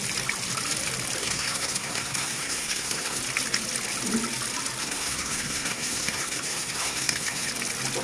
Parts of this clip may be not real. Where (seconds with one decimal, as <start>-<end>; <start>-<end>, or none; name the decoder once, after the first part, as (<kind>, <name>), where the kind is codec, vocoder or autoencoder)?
1.2-3.2 (codec, SNAC); 4.8-7.5